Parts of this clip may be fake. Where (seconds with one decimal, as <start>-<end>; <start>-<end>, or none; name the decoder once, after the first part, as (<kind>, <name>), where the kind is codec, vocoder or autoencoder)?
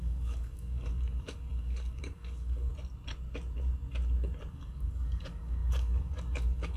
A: 0.0-2.7 (codec, DAC); 4.5-6.8